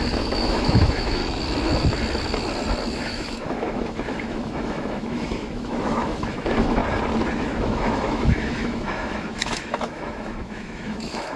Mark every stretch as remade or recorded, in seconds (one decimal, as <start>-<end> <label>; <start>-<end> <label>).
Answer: 0.0-1.2 remade; 1.2-2.9 recorded; 2.9-6.8 remade; 6.8-7.4 recorded; 7.4-11.4 remade